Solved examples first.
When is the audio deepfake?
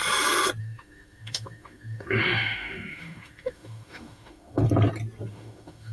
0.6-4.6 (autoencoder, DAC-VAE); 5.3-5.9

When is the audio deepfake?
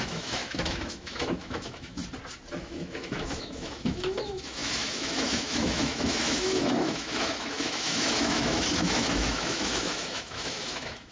0.0-2.0 (autoencoder, DAC-VAE); 2.6-11.1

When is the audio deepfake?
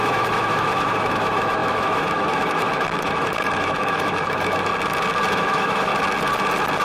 0.0-4.7 (autoencoder, DAC-VAE); 5.3-5.9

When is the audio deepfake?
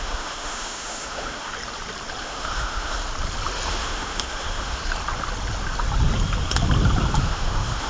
0.0-1.5 (autoencoder, DAC-VAE); 2.2-3.0; 3.7-4.8; 7.2-7.9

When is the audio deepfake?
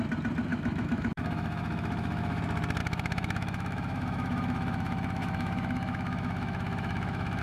0.5-2.4 (autoencoder, DAC-VAE); 2.8-7.4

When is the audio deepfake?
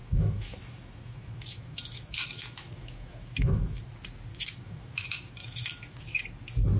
0.0-3.9 (autoencoder, DAC-VAE); 4.3-6.2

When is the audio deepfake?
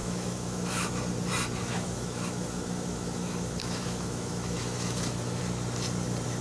0.0-1.0 (autoencoder, DAC-VAE); 1.6-5.4